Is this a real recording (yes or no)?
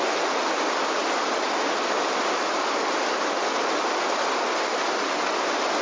yes